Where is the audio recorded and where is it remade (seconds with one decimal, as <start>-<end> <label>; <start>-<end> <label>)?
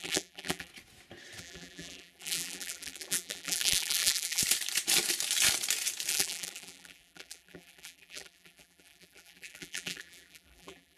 0.0-0.7 remade; 0.7-1.4 recorded; 1.4-4.4 remade; 4.4-6.1 recorded; 6.1-11.0 remade